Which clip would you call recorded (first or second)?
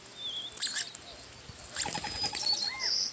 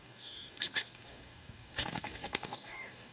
first